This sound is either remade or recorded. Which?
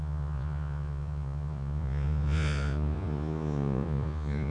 remade